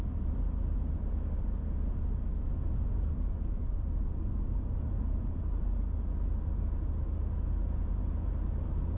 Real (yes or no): yes